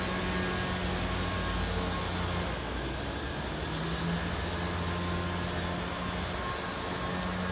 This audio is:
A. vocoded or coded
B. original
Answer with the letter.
B